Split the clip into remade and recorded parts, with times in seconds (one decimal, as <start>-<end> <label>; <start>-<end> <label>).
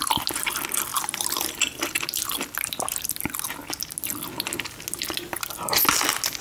0.0-0.9 recorded; 0.9-3.2 remade; 3.2-6.4 recorded